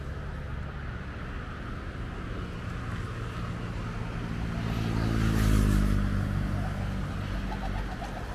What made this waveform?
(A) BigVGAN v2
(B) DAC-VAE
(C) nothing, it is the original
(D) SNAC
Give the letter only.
C